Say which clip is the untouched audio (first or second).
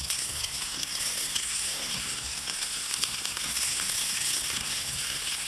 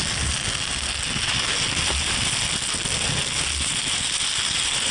second